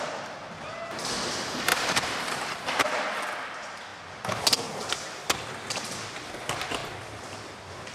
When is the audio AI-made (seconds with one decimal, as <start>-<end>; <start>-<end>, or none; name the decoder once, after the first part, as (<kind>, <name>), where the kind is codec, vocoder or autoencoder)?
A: 1.7-2.8 (vocoder, BigVGAN v2)